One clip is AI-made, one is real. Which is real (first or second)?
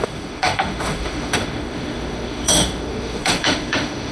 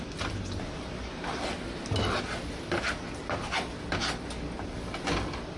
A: second